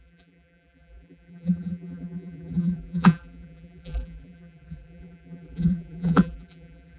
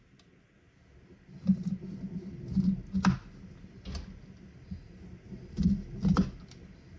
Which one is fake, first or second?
first